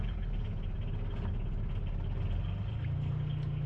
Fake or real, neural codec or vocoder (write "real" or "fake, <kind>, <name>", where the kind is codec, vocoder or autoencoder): real